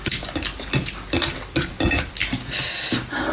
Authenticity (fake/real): real